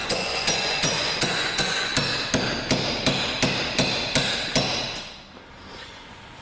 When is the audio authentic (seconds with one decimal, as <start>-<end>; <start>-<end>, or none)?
1.9-5.7